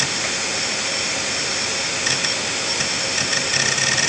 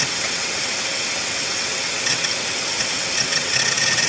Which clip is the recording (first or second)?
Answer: first